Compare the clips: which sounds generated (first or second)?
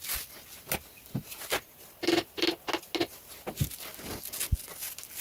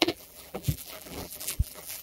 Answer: second